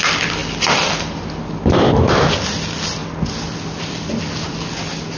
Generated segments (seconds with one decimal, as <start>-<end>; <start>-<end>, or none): none